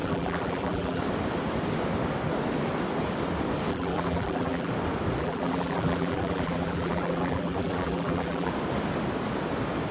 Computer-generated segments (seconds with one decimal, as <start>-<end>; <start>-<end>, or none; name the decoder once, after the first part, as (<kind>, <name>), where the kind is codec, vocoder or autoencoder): 0.0-1.0 (vocoder, BigVGAN v2); 3.7-4.7; 5.2-8.5